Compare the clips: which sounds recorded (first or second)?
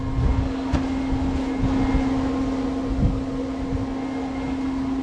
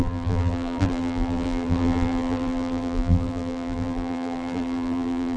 first